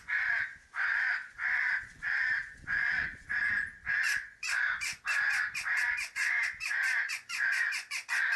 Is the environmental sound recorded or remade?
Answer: remade